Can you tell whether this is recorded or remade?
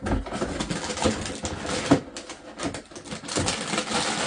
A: recorded